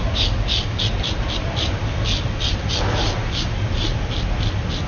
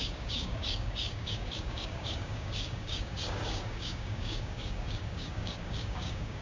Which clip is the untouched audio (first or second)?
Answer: first